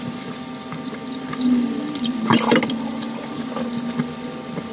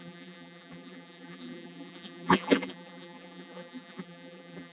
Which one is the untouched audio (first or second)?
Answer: first